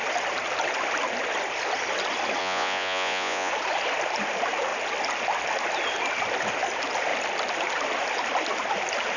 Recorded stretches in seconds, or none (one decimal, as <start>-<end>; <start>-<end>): 0.0-2.4; 3.5-9.2